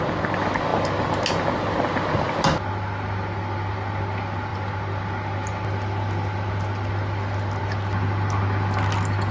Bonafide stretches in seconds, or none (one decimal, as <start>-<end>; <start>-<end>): 0.0-9.3